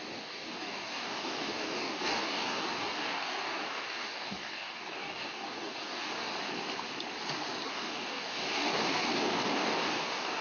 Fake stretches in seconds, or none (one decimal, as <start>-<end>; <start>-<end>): 0.0-6.3; 7.7-10.4